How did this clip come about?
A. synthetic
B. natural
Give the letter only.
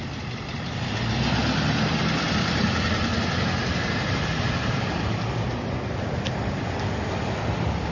B